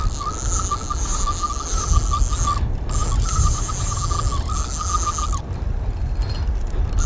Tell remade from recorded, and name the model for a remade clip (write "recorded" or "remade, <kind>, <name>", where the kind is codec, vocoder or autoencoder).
recorded